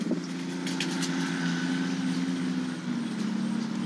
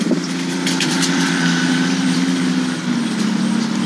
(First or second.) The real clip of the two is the first